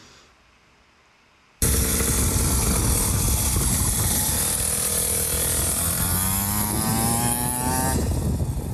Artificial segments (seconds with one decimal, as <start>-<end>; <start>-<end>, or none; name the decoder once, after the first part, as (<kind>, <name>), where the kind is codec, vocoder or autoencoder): 0.0-2.3 (vocoder, BigVGAN v2)